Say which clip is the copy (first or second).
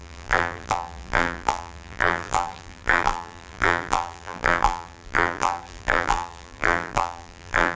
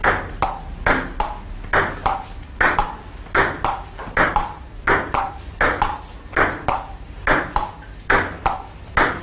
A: first